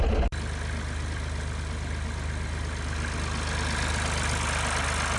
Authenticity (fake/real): real